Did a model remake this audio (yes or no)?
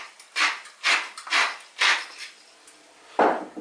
no